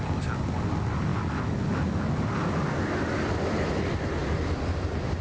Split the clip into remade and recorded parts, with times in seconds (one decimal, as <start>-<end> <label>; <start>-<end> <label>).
0.0-5.2 recorded